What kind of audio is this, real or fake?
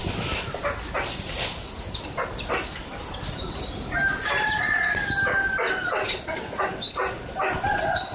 real